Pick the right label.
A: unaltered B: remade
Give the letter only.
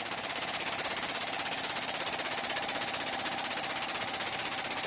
A